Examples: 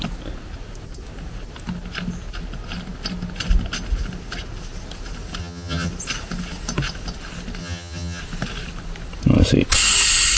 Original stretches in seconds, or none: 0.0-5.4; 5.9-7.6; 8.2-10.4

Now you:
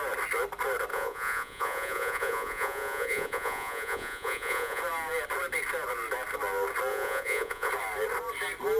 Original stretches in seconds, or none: 0.0-0.9; 4.8-6.9; 7.7-8.8

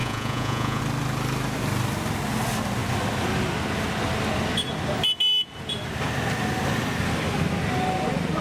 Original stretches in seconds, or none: 0.8-8.4

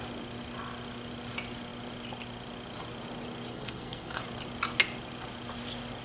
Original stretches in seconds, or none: 0.0-3.5; 4.2-6.0

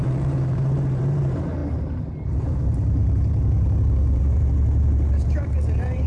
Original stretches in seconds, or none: 1.6-2.4

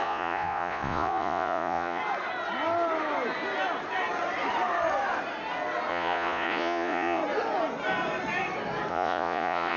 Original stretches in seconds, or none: 2.0-5.9; 7.2-8.9

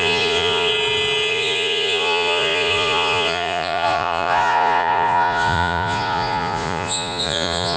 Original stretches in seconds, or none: 0.7-1.3